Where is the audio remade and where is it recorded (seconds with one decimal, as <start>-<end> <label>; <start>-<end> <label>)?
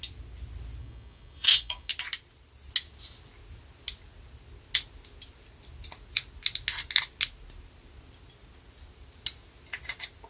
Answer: 0.0-0.8 recorded; 0.8-1.9 remade; 1.9-10.3 recorded